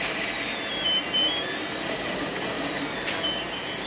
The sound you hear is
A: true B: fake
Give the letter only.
A